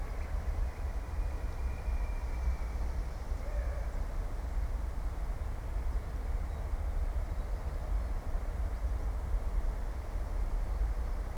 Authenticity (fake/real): fake